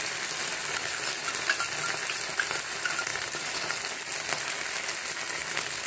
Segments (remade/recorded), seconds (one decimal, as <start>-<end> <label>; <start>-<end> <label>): 0.0-3.1 recorded; 3.1-3.7 remade; 3.7-5.9 recorded